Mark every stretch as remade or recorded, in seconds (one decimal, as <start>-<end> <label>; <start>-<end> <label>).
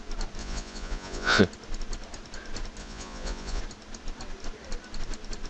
0.0-0.4 recorded; 0.4-1.4 remade; 1.4-2.8 recorded; 2.8-3.6 remade; 3.6-5.5 recorded